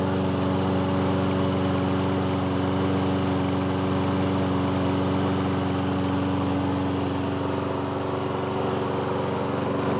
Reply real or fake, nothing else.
real